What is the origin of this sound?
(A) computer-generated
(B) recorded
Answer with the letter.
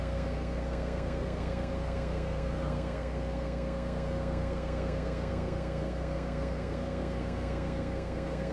A